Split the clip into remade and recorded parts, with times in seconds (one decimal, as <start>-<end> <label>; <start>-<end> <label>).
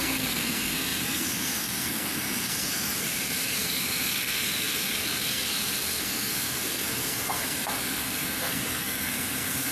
0.0-9.7 remade